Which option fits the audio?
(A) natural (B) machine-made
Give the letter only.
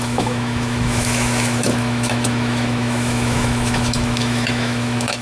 B